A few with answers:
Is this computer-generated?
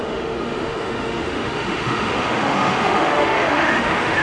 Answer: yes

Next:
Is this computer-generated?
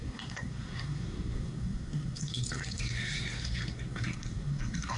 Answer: yes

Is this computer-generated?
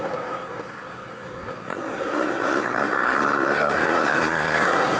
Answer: yes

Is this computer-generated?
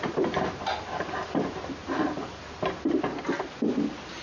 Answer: no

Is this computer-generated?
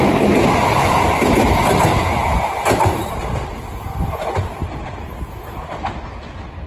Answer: no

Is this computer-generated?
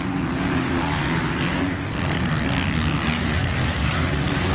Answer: no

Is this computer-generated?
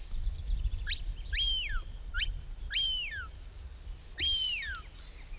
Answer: no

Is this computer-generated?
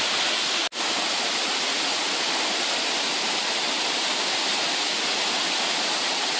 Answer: no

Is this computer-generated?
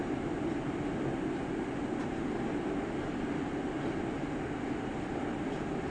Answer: no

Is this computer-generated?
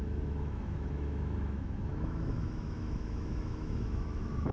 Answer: yes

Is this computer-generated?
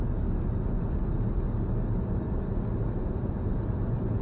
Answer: no